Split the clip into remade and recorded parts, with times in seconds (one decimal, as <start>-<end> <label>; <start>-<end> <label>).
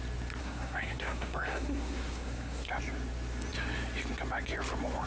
0.0-0.4 recorded; 0.4-2.7 remade; 2.7-5.1 recorded